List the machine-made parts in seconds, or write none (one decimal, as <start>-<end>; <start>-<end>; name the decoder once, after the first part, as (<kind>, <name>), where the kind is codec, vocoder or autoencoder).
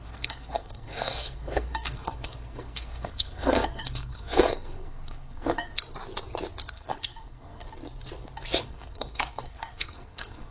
0.0-5.7 (codec, SNAC); 6.7-7.6; 8.6-10.5